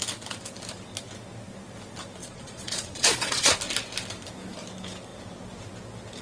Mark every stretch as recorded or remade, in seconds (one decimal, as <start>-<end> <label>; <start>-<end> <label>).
0.0-2.2 recorded; 2.2-3.6 remade; 3.6-6.2 recorded